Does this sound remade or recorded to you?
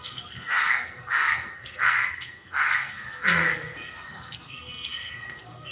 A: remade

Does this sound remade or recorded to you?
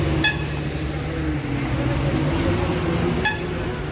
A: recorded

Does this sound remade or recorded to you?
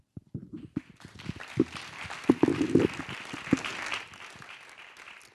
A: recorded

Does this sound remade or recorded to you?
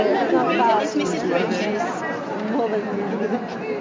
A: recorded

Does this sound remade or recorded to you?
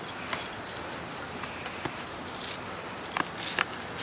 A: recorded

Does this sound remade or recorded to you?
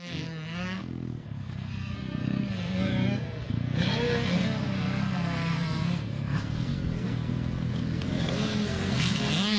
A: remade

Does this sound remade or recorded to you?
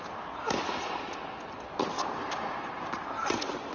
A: recorded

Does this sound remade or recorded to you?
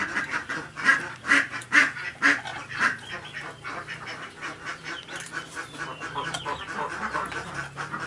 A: remade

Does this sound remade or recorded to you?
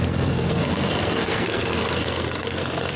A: remade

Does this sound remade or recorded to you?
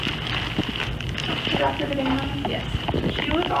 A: recorded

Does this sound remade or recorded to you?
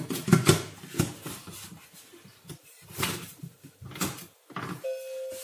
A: recorded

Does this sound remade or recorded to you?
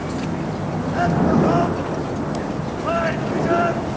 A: recorded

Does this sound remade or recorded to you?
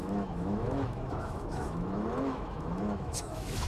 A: remade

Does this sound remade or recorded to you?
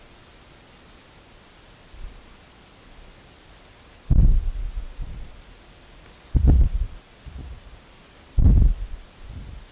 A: recorded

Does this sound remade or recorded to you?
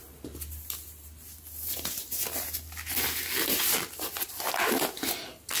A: recorded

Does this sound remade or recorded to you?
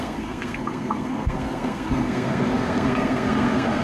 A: remade